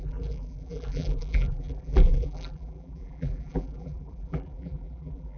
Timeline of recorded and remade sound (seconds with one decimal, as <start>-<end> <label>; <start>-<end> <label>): 0.0-5.4 remade